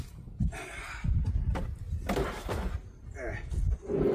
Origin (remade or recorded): recorded